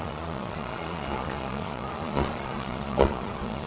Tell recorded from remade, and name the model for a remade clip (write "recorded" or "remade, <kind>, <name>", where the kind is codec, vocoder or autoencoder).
remade, vocoder, Vocos